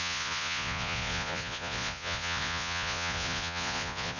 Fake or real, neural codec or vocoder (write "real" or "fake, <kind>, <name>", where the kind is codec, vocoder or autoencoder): fake, vocoder, Vocos